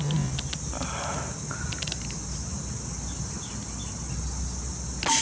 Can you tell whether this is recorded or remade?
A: recorded